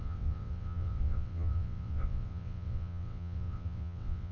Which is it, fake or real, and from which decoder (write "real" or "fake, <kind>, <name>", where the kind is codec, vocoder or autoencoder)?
fake, vocoder, WaveNeXt